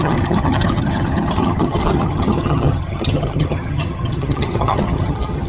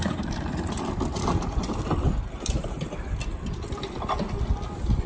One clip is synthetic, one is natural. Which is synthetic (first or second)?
first